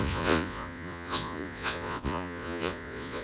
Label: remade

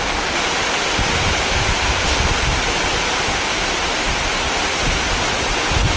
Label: recorded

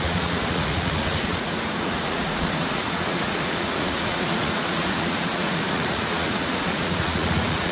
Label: remade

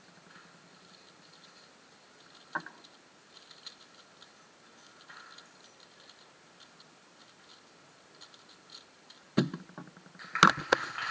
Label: recorded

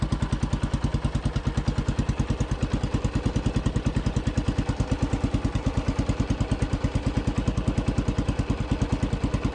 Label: recorded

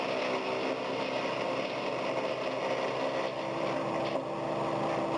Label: recorded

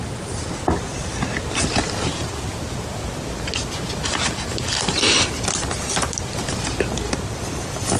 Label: recorded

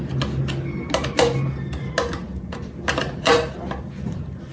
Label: recorded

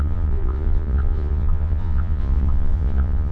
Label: remade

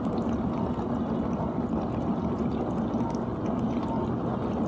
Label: recorded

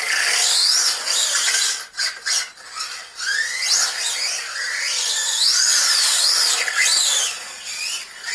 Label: recorded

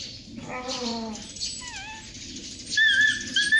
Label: recorded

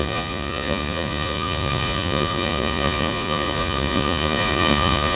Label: remade